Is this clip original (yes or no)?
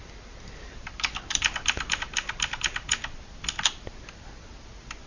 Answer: yes